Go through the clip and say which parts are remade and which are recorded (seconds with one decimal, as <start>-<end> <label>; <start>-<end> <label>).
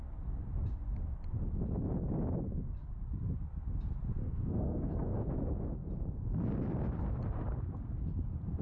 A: 0.0-4.2 recorded; 4.2-5.2 remade; 5.2-8.6 recorded